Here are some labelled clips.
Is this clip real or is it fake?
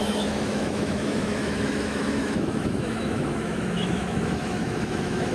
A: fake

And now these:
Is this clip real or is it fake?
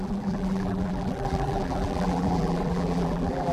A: fake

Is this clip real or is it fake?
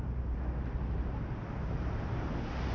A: real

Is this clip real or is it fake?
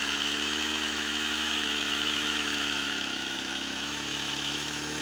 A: fake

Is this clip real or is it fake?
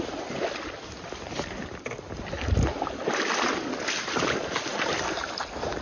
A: real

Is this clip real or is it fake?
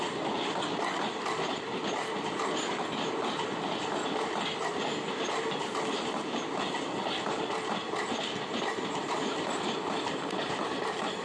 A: real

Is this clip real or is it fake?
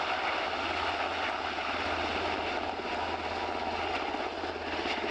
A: real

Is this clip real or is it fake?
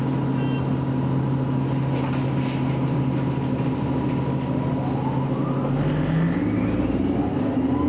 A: real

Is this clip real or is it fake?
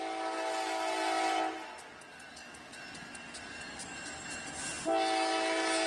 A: real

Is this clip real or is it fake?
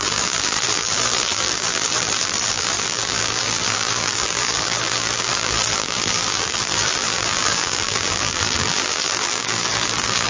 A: fake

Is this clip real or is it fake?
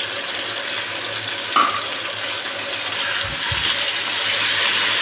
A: real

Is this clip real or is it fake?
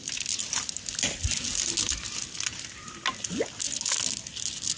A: real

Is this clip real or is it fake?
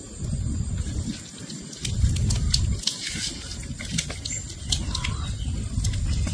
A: real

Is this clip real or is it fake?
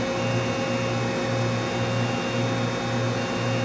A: real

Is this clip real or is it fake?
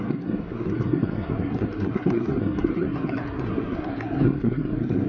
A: fake